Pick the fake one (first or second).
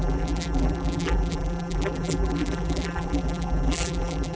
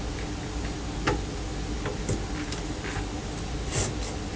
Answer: first